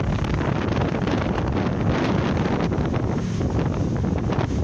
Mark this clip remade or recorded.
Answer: recorded